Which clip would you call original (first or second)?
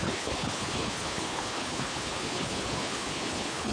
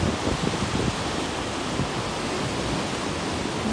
second